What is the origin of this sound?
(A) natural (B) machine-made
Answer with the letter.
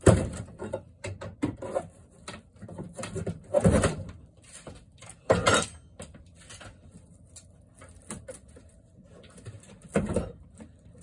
B